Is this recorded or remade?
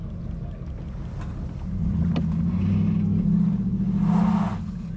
recorded